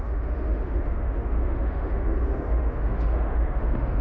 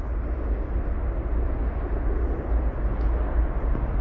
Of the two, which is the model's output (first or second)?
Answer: first